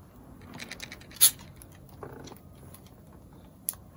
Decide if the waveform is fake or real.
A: real